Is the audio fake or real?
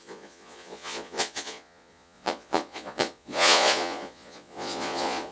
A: fake